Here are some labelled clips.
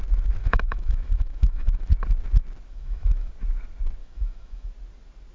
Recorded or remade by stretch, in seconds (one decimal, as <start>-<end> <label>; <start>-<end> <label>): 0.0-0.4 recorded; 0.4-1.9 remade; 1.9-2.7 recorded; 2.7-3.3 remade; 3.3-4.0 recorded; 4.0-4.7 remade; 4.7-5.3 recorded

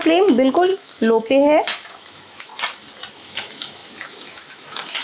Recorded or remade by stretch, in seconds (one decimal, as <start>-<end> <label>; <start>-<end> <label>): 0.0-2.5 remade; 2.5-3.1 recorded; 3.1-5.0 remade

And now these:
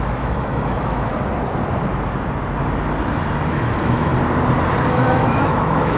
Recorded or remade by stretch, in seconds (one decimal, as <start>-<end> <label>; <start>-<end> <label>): 0.0-1.1 remade; 1.1-3.5 recorded; 3.5-4.1 remade; 4.1-4.9 recorded; 4.9-6.0 remade

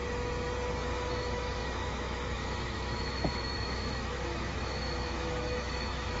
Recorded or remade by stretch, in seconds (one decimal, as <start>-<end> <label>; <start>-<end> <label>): 0.0-0.7 recorded; 0.7-6.2 remade

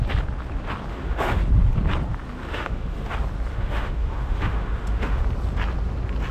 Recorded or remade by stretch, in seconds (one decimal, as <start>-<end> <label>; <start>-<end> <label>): 0.0-0.9 recorded; 0.9-1.4 remade; 1.4-2.4 recorded; 2.4-3.1 remade; 3.1-3.5 recorded; 3.5-5.2 remade; 5.2-6.3 recorded

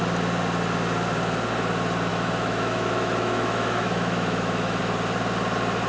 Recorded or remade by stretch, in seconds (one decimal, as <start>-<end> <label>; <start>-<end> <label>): 0.0-2.1 recorded; 2.1-4.8 remade; 4.8-5.9 recorded